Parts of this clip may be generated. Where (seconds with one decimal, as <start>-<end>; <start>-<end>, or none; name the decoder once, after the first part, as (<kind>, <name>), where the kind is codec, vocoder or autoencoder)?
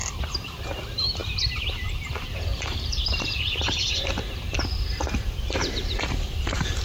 1.2-1.7 (vocoder, BigVGAN v2); 2.5-6.8